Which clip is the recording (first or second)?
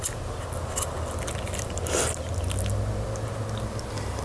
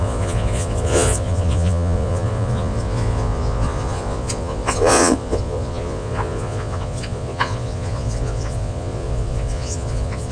first